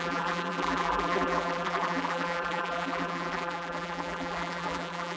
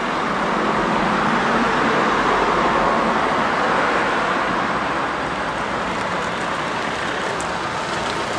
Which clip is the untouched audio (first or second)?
second